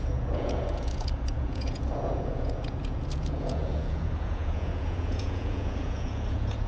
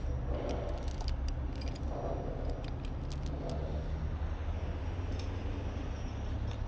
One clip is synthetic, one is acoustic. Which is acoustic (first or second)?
second